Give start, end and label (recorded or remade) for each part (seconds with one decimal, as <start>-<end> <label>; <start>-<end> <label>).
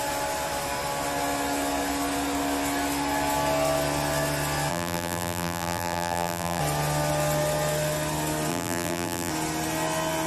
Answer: 0.0-4.7 recorded; 4.7-6.6 remade; 6.6-8.5 recorded; 8.5-9.3 remade; 9.3-10.3 recorded